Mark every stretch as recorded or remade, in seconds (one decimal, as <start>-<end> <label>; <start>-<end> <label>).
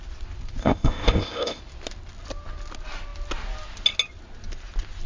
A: 0.0-0.6 recorded; 0.6-1.6 remade; 1.6-5.1 recorded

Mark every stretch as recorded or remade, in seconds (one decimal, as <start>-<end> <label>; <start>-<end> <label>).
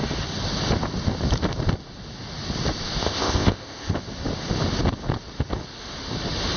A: 0.0-3.0 recorded; 3.0-3.9 remade; 3.9-6.6 recorded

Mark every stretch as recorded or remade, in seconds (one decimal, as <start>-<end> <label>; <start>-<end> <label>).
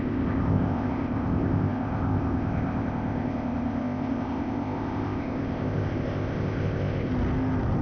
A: 0.0-7.1 remade; 7.1-7.8 recorded